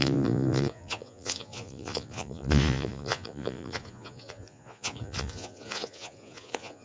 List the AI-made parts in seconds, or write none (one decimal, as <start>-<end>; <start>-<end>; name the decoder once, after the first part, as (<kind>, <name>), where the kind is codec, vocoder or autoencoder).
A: 0.0-6.8 (vocoder, Vocos)